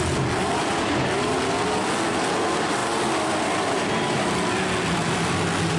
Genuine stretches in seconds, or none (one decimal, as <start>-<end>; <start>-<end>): 0.0-5.8

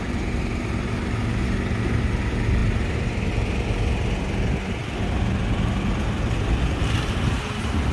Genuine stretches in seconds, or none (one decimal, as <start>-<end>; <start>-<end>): 0.0-7.9